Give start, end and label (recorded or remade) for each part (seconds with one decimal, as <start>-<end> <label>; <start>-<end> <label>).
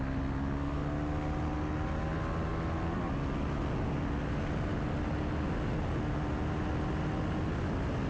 0.0-8.1 recorded